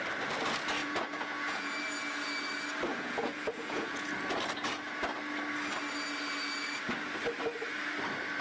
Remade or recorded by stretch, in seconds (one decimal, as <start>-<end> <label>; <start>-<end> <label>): 0.0-0.8 recorded; 0.8-1.8 remade; 1.8-2.9 recorded; 2.9-4.1 remade; 4.1-8.4 recorded